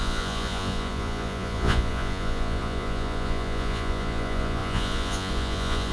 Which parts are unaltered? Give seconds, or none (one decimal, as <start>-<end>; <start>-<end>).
none